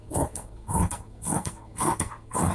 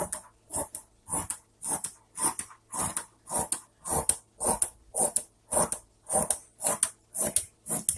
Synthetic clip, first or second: first